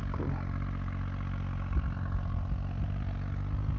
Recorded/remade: recorded